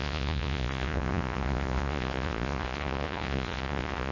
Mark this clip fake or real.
fake